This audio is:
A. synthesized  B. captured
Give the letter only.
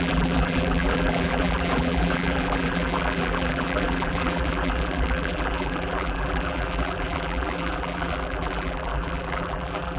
A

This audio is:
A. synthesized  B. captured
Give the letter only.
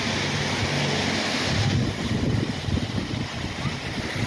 B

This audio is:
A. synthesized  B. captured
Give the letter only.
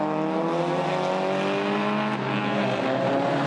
B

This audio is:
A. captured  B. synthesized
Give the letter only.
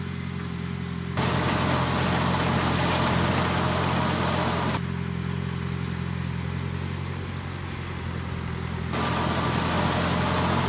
A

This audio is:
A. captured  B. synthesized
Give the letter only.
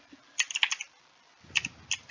A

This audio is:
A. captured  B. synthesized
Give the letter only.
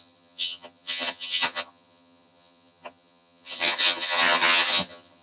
B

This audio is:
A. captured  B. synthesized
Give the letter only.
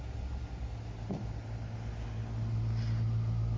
A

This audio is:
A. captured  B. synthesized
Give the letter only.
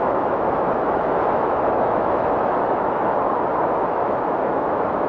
B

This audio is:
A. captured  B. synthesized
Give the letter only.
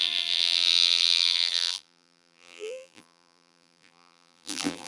B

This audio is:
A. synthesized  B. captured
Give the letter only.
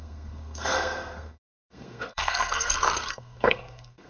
A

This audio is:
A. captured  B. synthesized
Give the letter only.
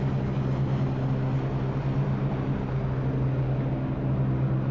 A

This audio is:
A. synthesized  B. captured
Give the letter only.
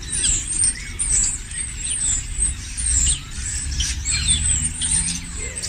A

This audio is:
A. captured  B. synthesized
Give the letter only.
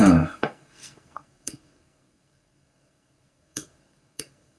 B